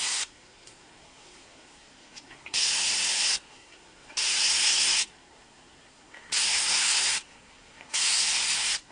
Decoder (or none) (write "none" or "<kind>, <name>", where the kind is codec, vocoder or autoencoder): codec, SNAC